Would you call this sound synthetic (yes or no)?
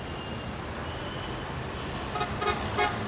no